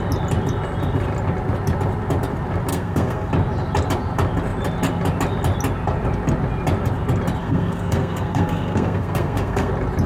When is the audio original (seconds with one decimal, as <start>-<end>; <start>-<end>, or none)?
0.0-2.7; 3.3-7.4; 9.7-10.1